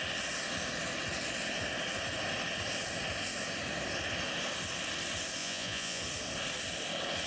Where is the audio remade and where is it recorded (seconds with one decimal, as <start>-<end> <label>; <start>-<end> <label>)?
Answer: 0.0-5.4 recorded; 5.4-6.0 remade; 6.0-7.3 recorded